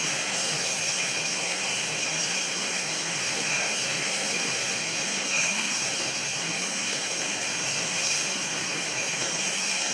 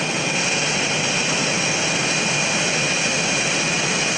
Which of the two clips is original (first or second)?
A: second